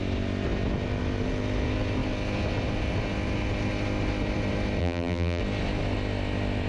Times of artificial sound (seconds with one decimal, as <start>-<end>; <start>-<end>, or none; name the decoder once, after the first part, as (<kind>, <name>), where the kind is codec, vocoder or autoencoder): 4.8-5.4 (vocoder, BigVGAN v2)